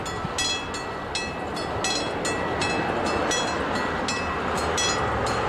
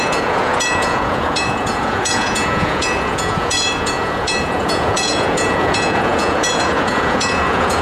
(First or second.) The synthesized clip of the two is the second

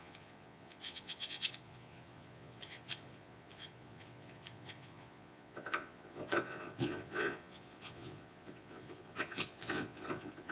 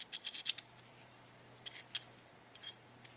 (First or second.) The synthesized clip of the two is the first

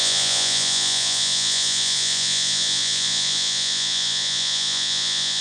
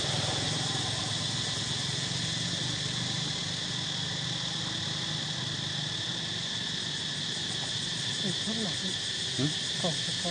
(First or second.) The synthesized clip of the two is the first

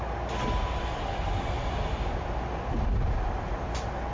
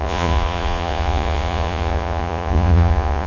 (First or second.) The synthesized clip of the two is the second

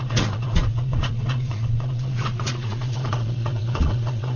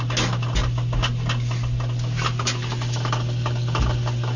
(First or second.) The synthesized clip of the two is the first